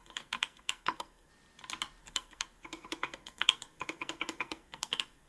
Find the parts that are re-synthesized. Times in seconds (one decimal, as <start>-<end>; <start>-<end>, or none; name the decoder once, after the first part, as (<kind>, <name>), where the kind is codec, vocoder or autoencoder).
0.0-1.3 (codec, SNAC); 2.0-5.3